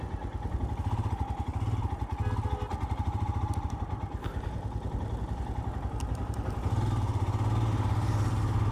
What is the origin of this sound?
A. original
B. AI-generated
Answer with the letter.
A